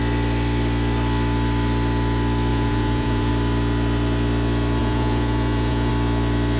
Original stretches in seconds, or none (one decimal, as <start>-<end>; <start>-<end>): 0.0-2.5; 3.3-4.8; 5.9-6.6